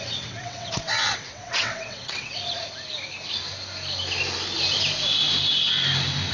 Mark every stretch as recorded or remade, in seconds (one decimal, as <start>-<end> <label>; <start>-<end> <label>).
0.0-2.4 remade; 2.4-6.3 recorded